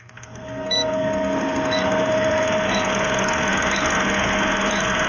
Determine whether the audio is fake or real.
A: fake